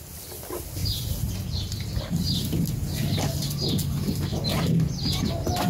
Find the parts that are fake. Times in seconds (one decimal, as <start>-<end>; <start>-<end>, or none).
none